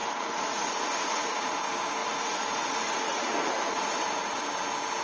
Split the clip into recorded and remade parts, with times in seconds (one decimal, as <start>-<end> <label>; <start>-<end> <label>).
0.0-1.5 remade; 1.5-2.0 recorded; 2.0-4.4 remade; 4.4-5.0 recorded